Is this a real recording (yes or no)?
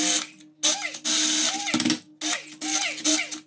yes